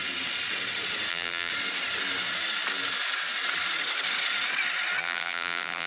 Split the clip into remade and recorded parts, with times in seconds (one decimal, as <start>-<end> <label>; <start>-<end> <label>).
0.0-1.1 recorded; 1.1-1.5 remade; 1.5-5.0 recorded; 5.0-5.9 remade